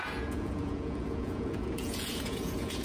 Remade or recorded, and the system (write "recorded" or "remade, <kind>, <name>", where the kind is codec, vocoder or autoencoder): remade, vocoder, Vocos